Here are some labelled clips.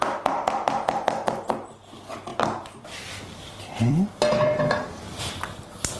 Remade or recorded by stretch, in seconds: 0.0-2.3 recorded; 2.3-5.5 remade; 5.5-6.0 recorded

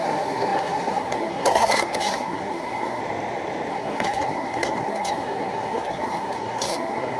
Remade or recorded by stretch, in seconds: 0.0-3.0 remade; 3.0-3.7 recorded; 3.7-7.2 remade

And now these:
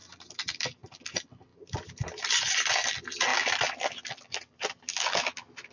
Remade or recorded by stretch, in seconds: 0.0-1.5 recorded; 1.5-2.2 remade; 2.2-5.7 recorded

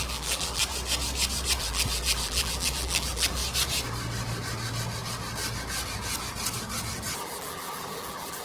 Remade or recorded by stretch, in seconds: 0.0-0.6 remade; 0.6-1.6 recorded; 1.6-3.4 remade; 3.4-7.2 recorded; 7.2-8.4 remade

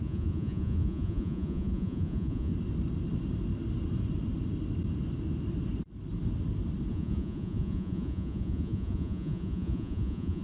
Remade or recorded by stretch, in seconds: 0.0-2.5 remade; 2.5-6.9 recorded; 6.9-10.4 remade